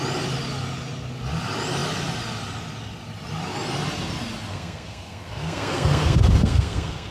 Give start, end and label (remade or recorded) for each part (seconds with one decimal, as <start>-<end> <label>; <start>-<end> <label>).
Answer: 0.0-4.5 recorded; 4.5-7.1 remade